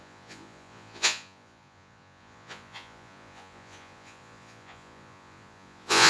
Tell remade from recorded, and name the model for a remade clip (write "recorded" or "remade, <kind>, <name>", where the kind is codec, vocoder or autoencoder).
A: remade, vocoder, Vocos